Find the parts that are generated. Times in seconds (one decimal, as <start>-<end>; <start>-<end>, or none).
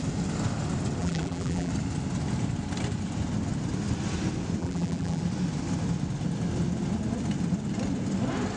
1.0-1.7; 4.6-5.2